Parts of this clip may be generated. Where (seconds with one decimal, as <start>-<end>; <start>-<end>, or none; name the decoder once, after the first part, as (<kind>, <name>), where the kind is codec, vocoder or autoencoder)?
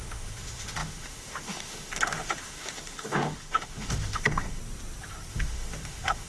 0.0-4.6 (autoencoder, DAC-VAE); 5.3-6.3